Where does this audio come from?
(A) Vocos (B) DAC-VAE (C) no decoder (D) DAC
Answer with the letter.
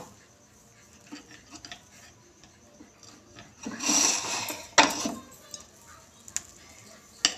C